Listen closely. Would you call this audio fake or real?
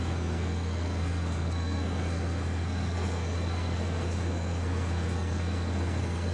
fake